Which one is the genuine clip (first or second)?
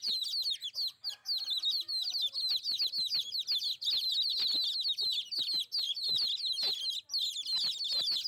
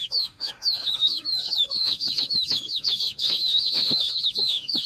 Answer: first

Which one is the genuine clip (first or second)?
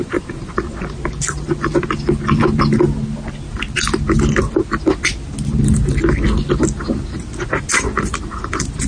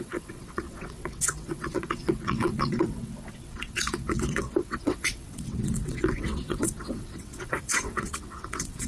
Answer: first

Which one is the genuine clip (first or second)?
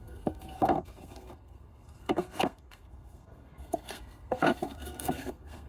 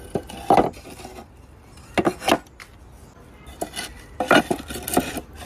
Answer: second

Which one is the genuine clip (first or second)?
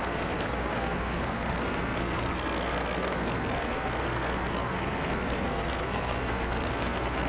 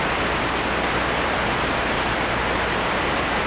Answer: second